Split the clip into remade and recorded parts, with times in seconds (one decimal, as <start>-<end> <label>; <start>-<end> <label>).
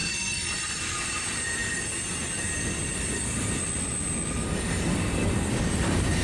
0.0-1.6 remade; 1.6-5.3 recorded; 5.3-6.2 remade